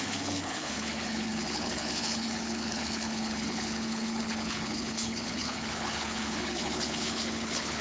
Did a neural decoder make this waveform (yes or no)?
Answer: yes